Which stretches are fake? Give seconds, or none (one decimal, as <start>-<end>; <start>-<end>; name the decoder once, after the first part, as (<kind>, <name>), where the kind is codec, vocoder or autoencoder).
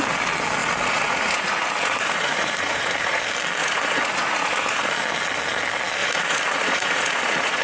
0.6-3.2 (vocoder, Vocos); 3.6-4.9; 6.0-7.6